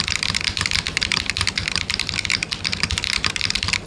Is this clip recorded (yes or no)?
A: yes